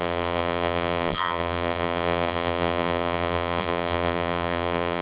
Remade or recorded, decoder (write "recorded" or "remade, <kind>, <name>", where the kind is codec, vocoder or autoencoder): remade, vocoder, BigVGAN v2